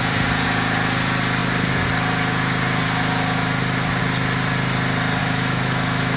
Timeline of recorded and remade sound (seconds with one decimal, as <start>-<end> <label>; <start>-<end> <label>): 0.0-5.2 recorded; 5.2-6.2 remade